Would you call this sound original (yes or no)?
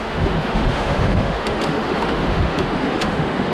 no